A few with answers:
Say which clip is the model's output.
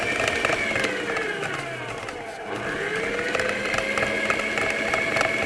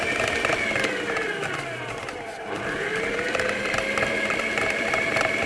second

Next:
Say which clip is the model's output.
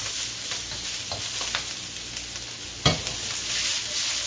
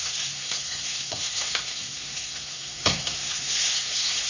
second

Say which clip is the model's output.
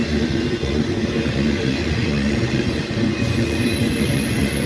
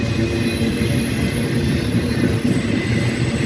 first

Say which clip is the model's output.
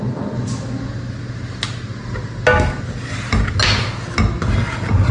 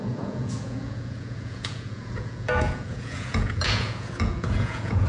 second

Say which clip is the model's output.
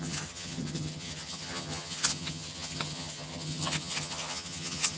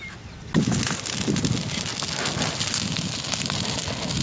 first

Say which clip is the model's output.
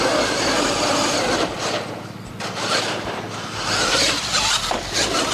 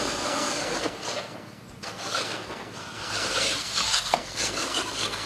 second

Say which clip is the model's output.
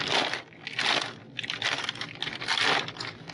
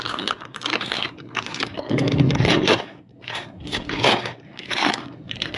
second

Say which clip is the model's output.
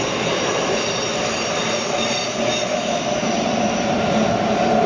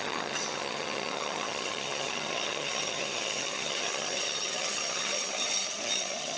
second